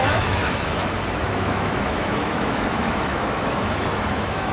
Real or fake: fake